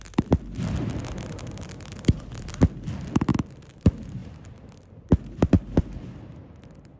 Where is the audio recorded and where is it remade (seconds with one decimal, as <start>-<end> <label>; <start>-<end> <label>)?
0.0-7.0 recorded